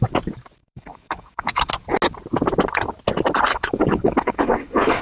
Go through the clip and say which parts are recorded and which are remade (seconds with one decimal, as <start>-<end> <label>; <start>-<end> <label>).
0.0-0.6 recorded; 0.6-1.7 remade; 1.7-3.5 recorded; 3.5-5.0 remade